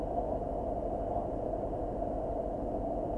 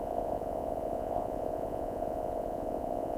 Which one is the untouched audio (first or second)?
first